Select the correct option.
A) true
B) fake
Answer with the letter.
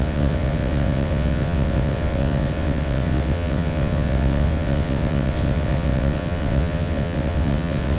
B